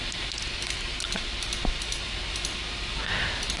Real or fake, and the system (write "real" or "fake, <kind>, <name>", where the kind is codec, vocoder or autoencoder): real